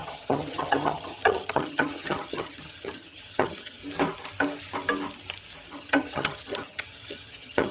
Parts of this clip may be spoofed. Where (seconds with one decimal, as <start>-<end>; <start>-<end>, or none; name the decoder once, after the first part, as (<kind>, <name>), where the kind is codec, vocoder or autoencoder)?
0.0-3.8 (vocoder, HiFi-GAN); 5.7-7.7